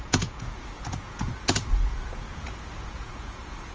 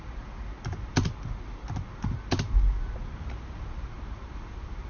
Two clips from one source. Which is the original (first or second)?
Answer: second